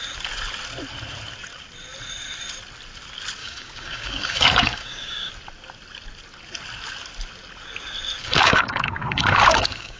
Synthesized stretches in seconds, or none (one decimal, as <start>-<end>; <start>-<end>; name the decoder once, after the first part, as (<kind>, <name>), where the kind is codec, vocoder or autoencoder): 3.4-5.3 (codec, DAC); 8.2-10.0